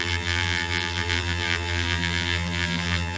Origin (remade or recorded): remade